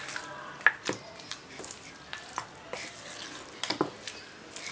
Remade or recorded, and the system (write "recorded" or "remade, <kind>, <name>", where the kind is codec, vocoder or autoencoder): recorded